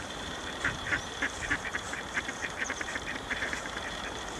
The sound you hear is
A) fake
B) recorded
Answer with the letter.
A